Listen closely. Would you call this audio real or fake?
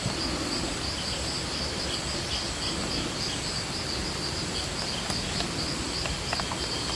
real